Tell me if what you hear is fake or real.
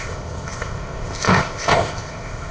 fake